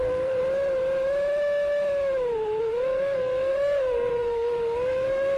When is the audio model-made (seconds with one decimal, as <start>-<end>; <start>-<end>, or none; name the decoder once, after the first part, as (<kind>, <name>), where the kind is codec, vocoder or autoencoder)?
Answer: 0.0-0.4 (codec, SNAC); 2.6-5.4

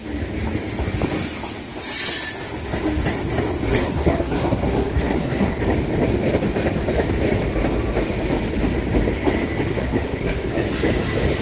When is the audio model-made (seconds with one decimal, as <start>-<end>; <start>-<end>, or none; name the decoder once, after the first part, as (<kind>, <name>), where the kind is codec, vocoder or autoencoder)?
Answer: 3.7-5.6 (codec, SNAC); 9.7-10.7

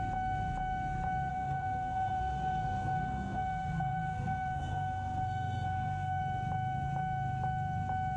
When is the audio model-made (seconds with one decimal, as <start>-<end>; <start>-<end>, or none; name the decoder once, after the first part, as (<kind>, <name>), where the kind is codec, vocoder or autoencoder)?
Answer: 1.3-6.2 (codec, SNAC)

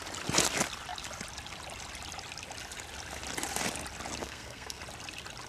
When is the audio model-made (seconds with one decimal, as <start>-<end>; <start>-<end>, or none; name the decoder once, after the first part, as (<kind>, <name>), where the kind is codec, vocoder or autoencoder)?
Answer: 4.2-4.8 (codec, SNAC)

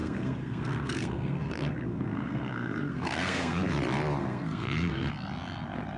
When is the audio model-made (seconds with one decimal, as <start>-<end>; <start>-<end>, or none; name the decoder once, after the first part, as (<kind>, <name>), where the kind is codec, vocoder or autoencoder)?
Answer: 0.0-3.6 (codec, SNAC); 4.2-5.1

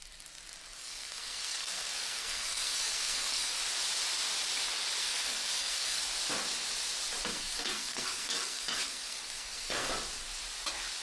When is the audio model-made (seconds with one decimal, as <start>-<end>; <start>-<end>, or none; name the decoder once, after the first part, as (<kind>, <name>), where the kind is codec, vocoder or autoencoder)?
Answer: 0.8-3.6 (codec, SNAC); 5.0-6.0; 7.3-9.9

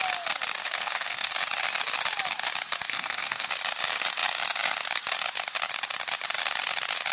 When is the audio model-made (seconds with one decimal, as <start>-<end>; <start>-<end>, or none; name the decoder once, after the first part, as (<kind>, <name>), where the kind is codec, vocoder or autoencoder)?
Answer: 0.6-1.3 (codec, SNAC); 2.9-3.5